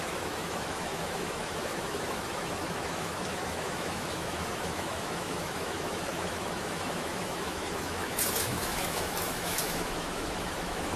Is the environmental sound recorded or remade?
remade